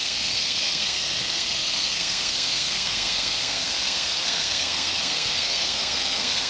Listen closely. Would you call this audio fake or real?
fake